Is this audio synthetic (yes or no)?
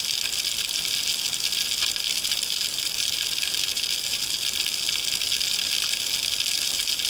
no